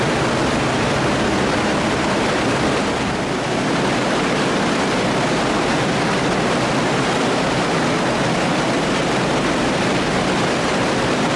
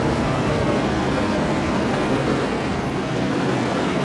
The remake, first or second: second